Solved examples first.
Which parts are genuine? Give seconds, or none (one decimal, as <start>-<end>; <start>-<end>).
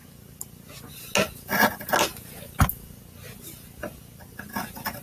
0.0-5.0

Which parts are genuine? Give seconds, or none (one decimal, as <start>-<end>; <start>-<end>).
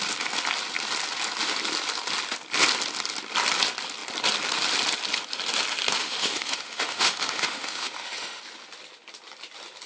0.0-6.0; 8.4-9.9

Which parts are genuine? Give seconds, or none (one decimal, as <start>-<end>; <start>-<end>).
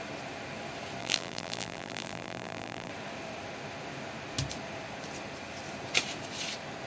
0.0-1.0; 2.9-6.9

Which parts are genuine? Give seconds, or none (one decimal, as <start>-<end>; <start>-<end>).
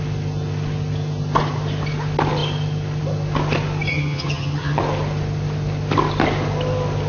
0.0-3.9; 4.8-7.1